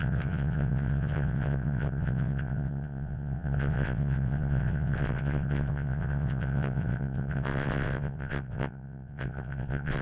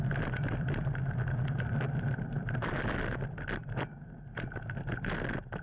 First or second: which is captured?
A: second